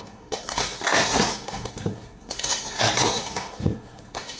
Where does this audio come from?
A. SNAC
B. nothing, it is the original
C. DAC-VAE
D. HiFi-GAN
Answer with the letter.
A